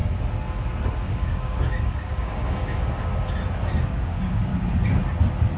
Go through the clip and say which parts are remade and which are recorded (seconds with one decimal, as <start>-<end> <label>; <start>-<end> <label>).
0.0-1.1 recorded; 1.1-3.1 remade; 3.1-3.8 recorded; 3.8-4.5 remade; 4.5-5.6 recorded